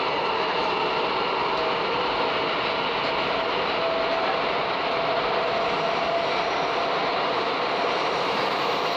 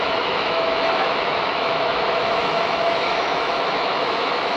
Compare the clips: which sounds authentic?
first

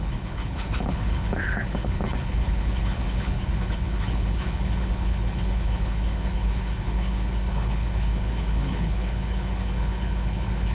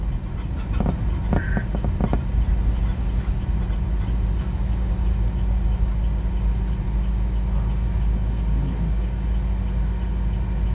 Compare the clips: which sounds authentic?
second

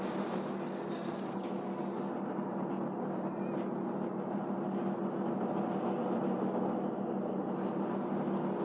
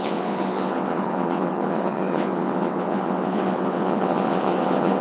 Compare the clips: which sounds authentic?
first